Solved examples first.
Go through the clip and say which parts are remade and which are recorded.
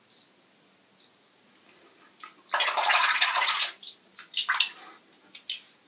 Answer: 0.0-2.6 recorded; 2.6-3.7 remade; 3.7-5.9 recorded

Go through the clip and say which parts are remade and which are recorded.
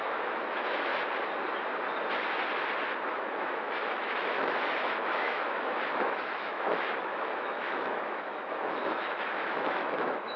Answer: 0.0-0.9 remade; 0.9-3.1 recorded; 3.1-10.4 remade